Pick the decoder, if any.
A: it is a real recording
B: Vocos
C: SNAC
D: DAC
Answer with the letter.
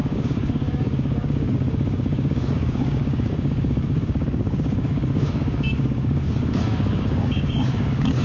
D